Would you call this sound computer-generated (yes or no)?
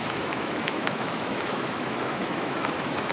yes